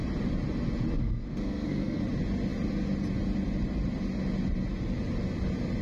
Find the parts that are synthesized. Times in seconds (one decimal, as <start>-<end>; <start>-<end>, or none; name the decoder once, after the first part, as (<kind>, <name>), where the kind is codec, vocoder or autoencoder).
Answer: 1.0-2.0 (codec, SNAC)